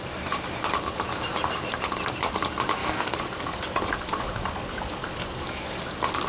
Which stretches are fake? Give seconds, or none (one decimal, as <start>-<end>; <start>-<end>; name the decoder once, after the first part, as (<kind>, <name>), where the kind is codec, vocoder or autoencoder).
2.8-5.8 (codec, DAC)